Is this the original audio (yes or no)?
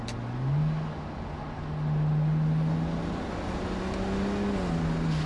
yes